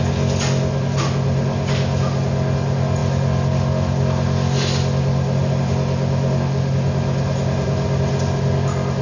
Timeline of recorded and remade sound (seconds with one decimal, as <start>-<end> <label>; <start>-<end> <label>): 0.0-9.0 recorded